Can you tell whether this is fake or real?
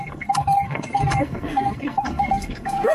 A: fake